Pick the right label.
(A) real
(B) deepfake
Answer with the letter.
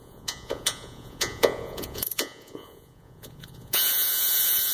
B